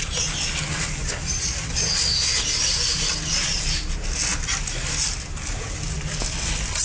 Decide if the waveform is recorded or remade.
recorded